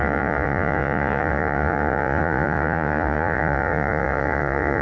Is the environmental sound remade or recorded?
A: remade